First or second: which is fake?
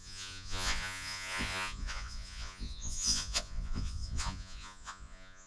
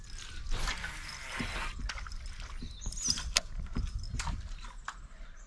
first